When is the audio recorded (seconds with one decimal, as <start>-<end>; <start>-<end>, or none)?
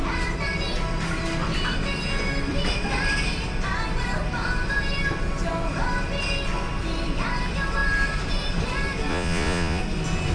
0.0-9.1; 9.8-10.3